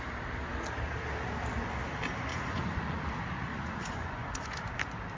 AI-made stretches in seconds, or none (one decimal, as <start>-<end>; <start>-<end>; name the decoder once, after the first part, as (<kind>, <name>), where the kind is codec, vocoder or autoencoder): 2.3-3.1 (vocoder, Vocos); 3.5-4.6

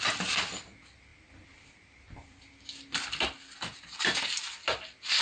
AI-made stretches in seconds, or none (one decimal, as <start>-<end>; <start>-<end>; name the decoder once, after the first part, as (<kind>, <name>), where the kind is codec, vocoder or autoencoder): none

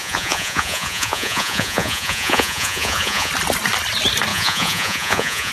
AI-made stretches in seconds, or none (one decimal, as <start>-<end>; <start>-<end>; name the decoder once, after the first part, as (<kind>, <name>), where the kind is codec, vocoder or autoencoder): 0.0-3.3 (vocoder, Vocos); 4.3-5.5